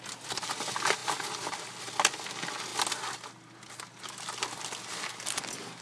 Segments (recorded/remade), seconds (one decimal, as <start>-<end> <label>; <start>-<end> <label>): 0.0-5.8 recorded